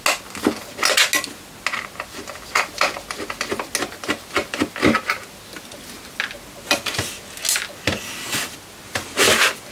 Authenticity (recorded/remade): recorded